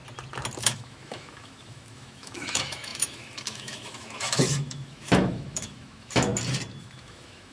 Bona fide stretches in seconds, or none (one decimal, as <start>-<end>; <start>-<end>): 0.0-0.6; 6.3-6.8